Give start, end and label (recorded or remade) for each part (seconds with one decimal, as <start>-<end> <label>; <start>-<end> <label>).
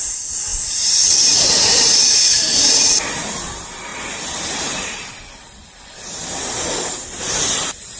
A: 0.0-8.0 recorded